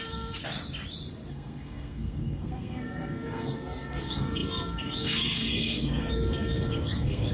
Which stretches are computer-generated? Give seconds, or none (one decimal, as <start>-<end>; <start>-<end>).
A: 0.0-0.4; 1.3-7.3